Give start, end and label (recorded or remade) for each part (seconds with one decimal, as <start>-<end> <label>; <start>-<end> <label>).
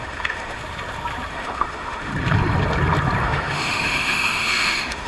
0.0-0.6 remade; 0.6-1.3 recorded; 1.3-2.1 remade; 2.1-3.2 recorded; 3.2-5.1 remade